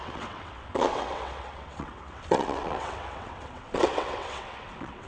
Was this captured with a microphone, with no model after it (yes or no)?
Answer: no